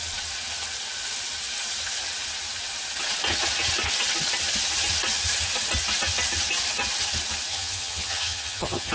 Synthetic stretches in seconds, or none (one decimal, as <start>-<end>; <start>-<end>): 7.5-8.9